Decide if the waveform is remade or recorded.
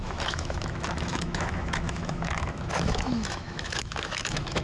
remade